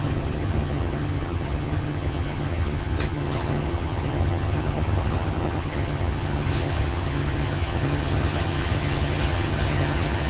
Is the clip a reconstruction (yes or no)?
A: yes